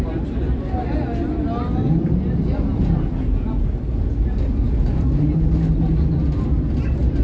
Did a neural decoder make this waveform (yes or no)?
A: no